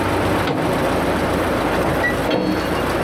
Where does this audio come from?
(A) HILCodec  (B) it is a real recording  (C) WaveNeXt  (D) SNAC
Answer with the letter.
B